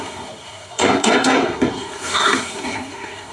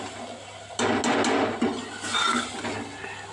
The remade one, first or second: first